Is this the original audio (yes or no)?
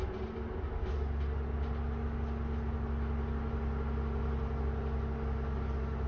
yes